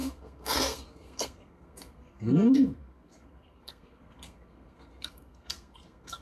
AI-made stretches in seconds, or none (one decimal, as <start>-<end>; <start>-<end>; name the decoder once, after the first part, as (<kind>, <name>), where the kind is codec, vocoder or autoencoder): 0.0-6.2 (codec, SNAC)